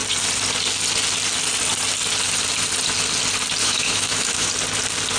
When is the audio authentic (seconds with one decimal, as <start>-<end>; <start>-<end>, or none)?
0.0-3.6; 4.5-5.2